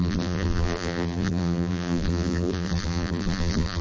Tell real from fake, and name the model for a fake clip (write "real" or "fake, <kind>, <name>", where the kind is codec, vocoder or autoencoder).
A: fake, vocoder, BigVGAN v2